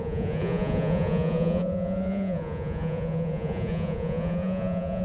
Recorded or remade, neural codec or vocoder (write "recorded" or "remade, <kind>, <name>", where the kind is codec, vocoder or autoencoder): remade, vocoder, Vocos